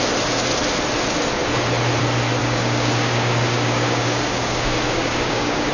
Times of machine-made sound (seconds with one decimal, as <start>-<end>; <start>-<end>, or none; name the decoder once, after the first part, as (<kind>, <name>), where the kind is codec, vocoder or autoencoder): 2.4-5.7 (codec, DAC)